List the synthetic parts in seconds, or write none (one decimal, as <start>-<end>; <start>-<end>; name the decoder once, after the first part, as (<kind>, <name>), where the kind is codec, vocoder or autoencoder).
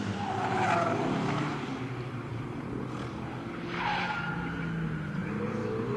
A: none